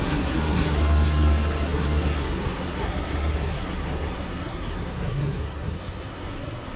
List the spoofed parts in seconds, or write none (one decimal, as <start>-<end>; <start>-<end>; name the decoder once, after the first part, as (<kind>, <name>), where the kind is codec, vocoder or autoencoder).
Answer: 0.0-6.8 (codec, SNAC)